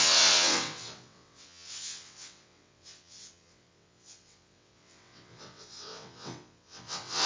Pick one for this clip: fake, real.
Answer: fake